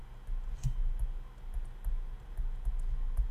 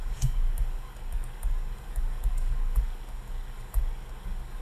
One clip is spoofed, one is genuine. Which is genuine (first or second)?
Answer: first